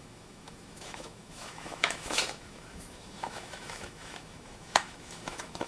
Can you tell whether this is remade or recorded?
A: remade